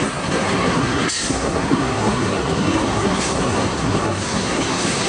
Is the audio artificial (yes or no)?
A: yes